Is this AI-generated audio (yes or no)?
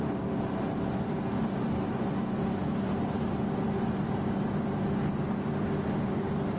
no